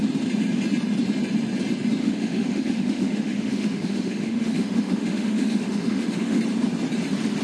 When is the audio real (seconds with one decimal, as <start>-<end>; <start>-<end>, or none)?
0.0-2.0; 6.4-7.4